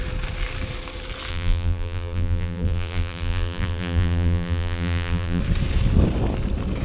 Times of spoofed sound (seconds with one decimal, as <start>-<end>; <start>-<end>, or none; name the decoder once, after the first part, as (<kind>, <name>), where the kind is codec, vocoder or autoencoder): 1.3-5.4 (vocoder, BigVGAN v2)

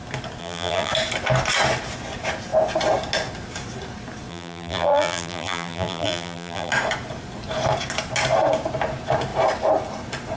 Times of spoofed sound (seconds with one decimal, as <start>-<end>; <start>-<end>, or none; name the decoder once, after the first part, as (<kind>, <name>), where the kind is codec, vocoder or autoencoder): 0.4-0.9 (vocoder, BigVGAN v2); 4.3-6.7

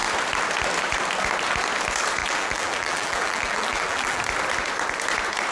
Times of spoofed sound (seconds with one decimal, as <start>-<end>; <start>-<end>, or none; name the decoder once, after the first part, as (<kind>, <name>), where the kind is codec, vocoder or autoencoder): 2.2-4.2 (vocoder, BigVGAN v2)

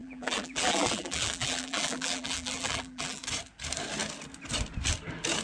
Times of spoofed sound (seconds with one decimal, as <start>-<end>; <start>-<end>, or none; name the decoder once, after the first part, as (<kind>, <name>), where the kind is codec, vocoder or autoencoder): 0.0-3.2 (vocoder, BigVGAN v2)